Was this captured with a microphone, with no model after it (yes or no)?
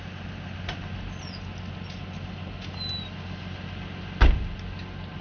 yes